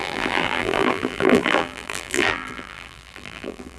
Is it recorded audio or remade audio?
remade